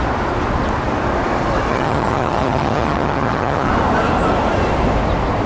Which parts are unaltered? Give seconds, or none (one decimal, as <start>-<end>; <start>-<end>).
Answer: 0.0-1.7; 3.7-5.5